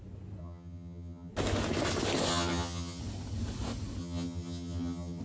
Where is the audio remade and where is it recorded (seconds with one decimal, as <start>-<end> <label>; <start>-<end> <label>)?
0.0-0.4 recorded; 0.4-1.3 remade; 1.3-2.3 recorded; 2.3-3.0 remade; 3.0-4.0 recorded; 4.0-5.2 remade